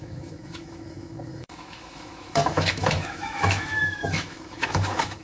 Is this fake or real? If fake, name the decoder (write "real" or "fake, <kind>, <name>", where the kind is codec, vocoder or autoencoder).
fake, autoencoder, DAC-VAE